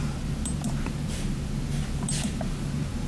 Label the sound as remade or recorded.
remade